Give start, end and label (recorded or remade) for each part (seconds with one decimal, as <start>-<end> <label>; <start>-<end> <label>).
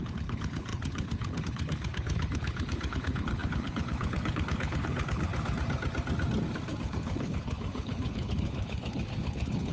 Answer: 0.0-5.3 remade; 5.3-6.8 recorded; 6.8-9.7 remade